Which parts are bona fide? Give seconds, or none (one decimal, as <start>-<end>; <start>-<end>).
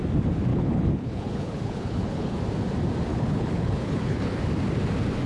0.0-0.5; 2.4-3.1; 4.4-5.3